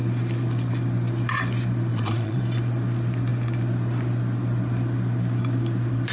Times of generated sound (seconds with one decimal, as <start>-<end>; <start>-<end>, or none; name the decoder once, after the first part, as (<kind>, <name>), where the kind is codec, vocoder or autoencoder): 1.9-2.4 (vocoder, Vocos)